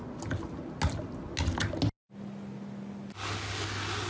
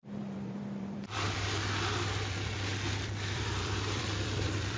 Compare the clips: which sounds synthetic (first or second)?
second